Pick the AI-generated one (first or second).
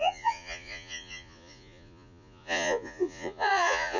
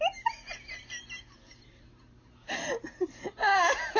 first